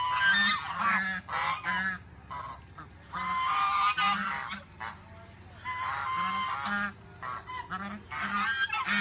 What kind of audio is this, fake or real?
real